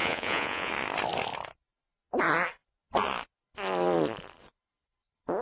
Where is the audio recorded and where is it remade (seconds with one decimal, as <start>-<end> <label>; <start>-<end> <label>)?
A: 0.0-0.7 remade; 0.7-5.4 recorded